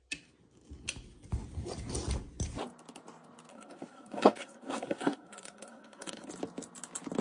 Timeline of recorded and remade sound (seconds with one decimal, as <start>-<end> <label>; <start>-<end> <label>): 0.0-3.5 recorded; 3.5-6.3 remade; 6.3-7.2 recorded